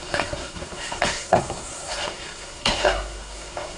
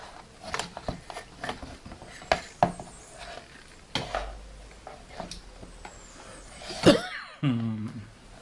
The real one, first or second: second